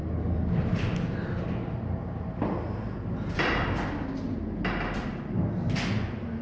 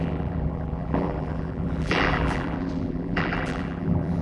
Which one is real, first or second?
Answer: first